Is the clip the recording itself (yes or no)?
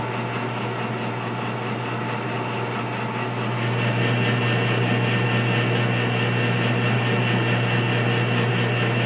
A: yes